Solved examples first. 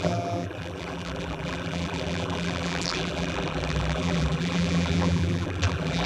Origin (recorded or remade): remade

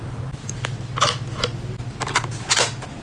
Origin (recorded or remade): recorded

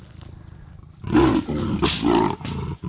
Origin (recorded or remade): recorded